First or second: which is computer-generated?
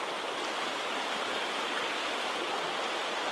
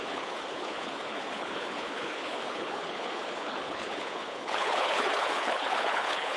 second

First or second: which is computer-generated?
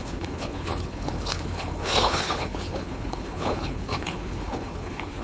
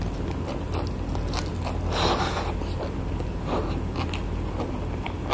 first